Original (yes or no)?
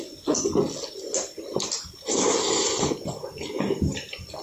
yes